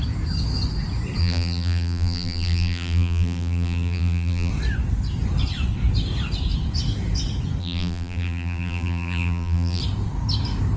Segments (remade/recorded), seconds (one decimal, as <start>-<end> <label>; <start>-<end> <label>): 0.0-1.2 recorded; 1.2-4.5 remade; 4.5-7.6 recorded; 7.6-9.8 remade; 9.8-10.8 recorded